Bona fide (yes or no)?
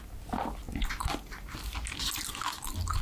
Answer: yes